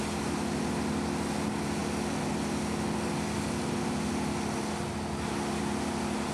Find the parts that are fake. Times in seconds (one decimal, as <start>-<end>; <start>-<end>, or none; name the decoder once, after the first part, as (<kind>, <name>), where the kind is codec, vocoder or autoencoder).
none